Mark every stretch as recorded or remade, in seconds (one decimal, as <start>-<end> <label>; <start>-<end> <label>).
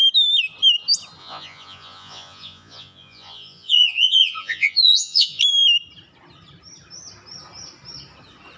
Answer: 0.0-1.2 recorded; 1.2-5.4 remade; 5.4-8.6 recorded